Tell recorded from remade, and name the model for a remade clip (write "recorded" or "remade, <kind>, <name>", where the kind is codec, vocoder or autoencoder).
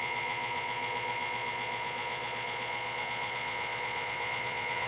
remade, vocoder, Vocos